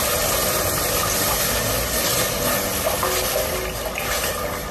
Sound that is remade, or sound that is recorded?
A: recorded